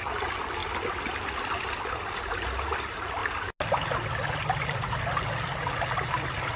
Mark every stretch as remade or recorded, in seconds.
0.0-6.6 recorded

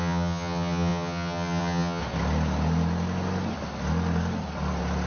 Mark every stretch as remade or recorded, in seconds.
0.0-2.0 remade; 2.0-5.1 recorded

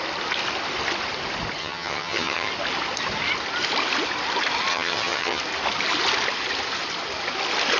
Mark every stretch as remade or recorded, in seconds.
0.0-1.6 recorded; 1.6-2.5 remade; 2.5-4.7 recorded; 4.7-5.4 remade; 5.4-7.8 recorded

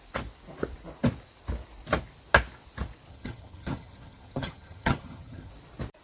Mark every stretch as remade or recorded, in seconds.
0.0-3.1 recorded; 3.1-5.5 remade; 5.5-6.0 recorded

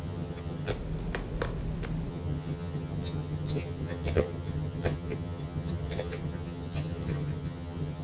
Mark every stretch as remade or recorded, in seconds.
0.0-0.7 remade; 0.7-2.1 recorded; 2.1-8.0 remade